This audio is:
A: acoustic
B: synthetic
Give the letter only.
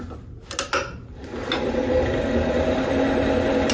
A